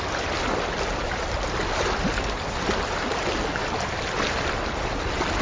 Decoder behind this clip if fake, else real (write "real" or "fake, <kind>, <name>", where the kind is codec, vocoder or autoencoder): real